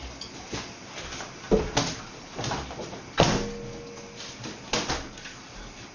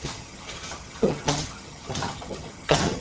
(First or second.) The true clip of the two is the first